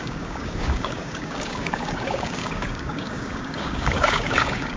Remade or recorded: remade